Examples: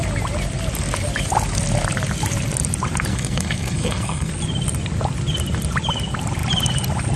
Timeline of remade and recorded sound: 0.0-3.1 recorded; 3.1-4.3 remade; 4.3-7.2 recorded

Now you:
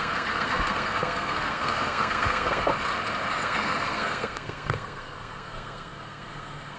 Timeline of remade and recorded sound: 0.0-2.7 remade; 2.7-3.3 recorded; 3.3-6.8 remade

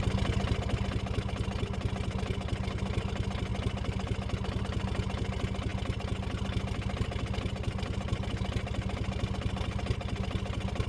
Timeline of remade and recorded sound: 0.0-10.9 recorded

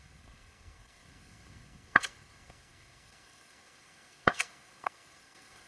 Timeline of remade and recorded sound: 0.0-5.7 remade

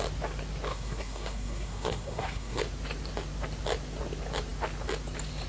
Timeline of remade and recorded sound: 0.0-0.7 recorded; 0.7-2.6 remade; 2.6-5.5 recorded